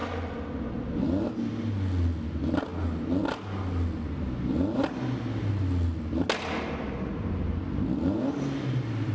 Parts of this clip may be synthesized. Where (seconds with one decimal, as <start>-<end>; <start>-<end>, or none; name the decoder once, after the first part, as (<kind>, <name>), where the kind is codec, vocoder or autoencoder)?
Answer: none